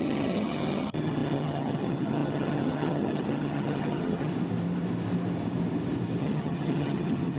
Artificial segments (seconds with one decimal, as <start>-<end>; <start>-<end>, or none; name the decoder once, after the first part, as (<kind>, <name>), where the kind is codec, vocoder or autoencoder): 0.0-4.3 (vocoder, HiFi-GAN); 6.2-7.4